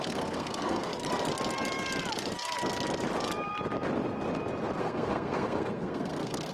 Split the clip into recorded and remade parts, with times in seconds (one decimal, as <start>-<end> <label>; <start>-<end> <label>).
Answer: 0.0-0.9 remade; 0.9-4.8 recorded; 4.8-6.5 remade